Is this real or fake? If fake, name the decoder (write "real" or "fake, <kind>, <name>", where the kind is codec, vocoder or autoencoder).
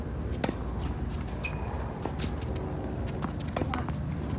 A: real